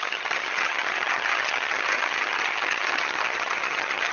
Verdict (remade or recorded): remade